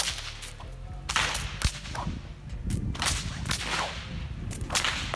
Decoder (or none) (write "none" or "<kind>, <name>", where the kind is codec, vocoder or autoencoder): none